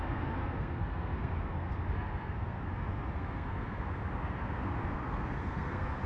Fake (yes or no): yes